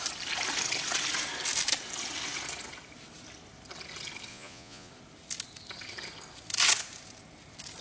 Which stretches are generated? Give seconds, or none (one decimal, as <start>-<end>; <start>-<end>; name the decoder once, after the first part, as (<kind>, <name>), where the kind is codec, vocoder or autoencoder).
4.3-4.9 (vocoder, Vocos)